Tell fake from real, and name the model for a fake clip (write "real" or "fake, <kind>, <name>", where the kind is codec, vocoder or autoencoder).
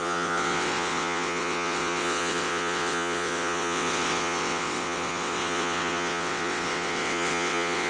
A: fake, vocoder, WaveNeXt